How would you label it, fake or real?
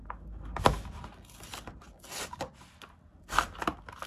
real